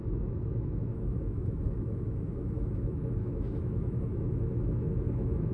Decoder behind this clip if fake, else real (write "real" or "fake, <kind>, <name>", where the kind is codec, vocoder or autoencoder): fake, autoencoder, DAC-VAE